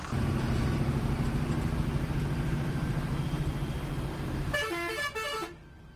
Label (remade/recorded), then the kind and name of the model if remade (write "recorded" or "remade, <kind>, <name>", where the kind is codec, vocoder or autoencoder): remade, vocoder, BigVGAN v2